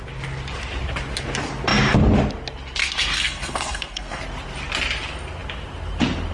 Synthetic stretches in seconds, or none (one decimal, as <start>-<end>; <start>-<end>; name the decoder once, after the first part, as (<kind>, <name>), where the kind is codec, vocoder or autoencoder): 2.8-4.2 (codec, SNAC)